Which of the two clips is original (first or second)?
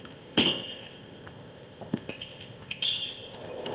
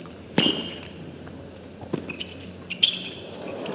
second